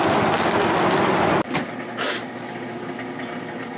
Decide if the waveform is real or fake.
real